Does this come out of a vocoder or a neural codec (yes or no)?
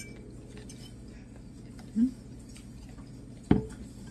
no